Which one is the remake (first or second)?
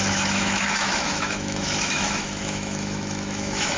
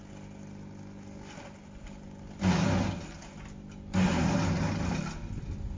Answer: first